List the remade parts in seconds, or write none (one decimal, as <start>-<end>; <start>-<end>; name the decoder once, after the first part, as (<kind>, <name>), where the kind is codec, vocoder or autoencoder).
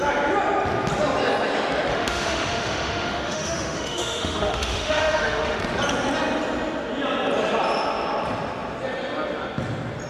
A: 1.9-5.6 (autoencoder, DAC-VAE)